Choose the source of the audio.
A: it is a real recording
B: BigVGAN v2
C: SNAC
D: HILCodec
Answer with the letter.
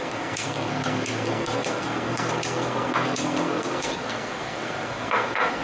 C